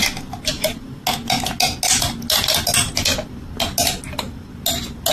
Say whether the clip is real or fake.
real